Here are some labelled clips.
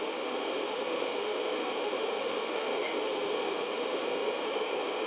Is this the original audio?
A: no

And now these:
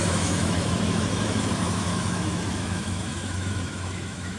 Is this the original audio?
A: no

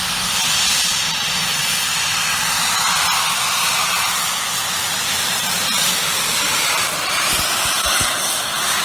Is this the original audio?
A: yes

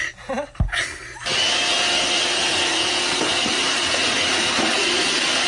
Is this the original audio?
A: yes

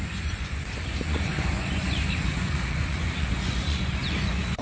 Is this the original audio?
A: no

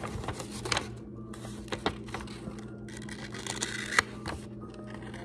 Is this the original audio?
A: yes